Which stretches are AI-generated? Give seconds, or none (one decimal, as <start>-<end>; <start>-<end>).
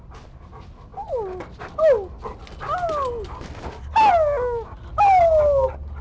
none